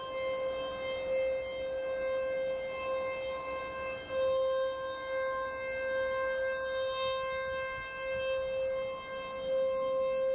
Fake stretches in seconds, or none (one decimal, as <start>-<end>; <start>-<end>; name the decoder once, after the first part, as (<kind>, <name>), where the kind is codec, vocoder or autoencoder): none